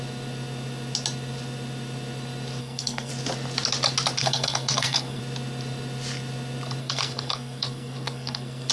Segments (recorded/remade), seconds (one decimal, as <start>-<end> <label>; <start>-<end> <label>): 0.0-2.6 recorded; 2.6-3.1 remade; 3.1-4.2 recorded; 4.2-5.2 remade; 5.2-6.8 recorded; 6.8-8.7 remade

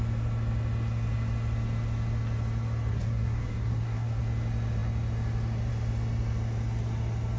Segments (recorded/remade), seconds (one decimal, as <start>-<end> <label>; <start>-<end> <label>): 0.0-2.9 recorded; 2.9-4.2 remade; 4.2-7.4 recorded

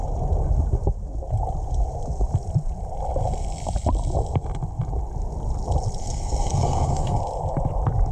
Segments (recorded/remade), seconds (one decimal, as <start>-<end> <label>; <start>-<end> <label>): 0.0-6.0 recorded; 6.0-7.2 remade; 7.2-8.1 recorded

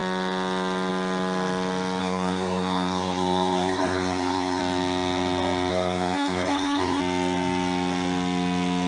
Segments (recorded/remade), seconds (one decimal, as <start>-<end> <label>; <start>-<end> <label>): 0.0-2.0 recorded; 2.0-4.6 remade; 4.6-5.7 recorded; 5.7-7.0 remade; 7.0-8.9 recorded

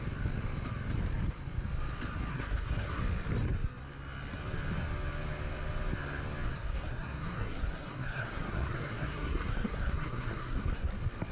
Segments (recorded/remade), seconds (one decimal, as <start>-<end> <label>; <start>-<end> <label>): 0.0-2.3 recorded; 2.3-3.0 remade; 3.0-6.5 recorded; 6.5-10.9 remade; 10.9-11.3 recorded

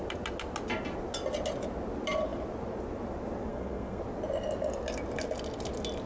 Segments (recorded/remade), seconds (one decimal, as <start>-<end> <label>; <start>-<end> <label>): 0.0-3.5 recorded; 3.5-4.0 remade; 4.0-6.1 recorded

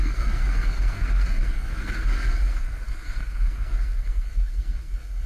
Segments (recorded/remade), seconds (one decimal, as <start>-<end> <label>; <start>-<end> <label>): 0.0-5.3 remade

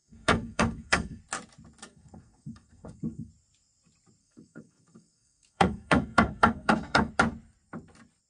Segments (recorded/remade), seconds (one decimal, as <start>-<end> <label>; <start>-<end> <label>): 0.0-1.2 remade; 1.2-1.9 recorded; 1.9-3.3 remade; 3.3-4.2 recorded; 4.2-7.1 remade; 7.1-8.3 recorded